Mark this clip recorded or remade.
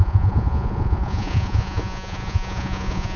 remade